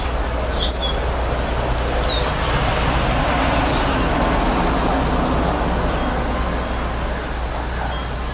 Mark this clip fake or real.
real